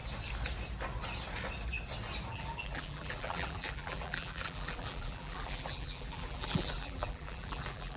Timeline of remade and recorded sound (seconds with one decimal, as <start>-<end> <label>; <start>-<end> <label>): 0.0-2.3 recorded; 2.3-8.0 remade